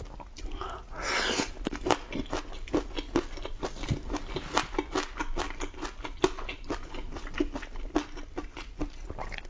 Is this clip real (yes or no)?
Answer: yes